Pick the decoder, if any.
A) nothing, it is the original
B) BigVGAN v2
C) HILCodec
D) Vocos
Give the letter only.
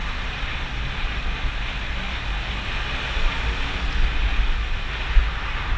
A